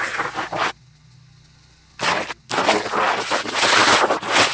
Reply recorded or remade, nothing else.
recorded